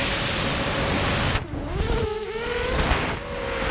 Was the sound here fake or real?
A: real